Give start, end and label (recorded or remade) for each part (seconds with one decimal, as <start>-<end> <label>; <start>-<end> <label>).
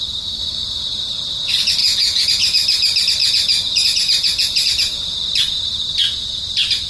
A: 0.0-1.8 recorded; 1.8-2.4 remade; 2.4-3.2 recorded; 3.2-5.0 remade; 5.0-6.9 recorded